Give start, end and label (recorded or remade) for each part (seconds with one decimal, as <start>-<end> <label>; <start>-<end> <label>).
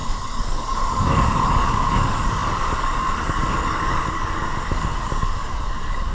0.0-6.1 remade